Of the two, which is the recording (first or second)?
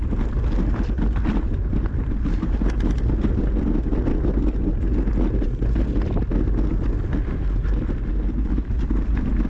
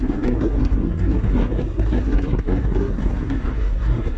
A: first